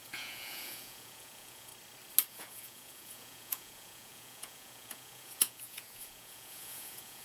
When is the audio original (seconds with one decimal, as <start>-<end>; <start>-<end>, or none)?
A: 1.7-2.3